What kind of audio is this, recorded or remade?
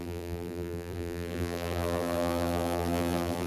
remade